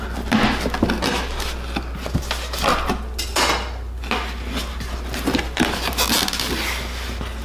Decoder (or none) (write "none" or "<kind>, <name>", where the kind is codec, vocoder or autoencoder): none